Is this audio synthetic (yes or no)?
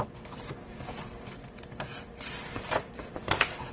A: no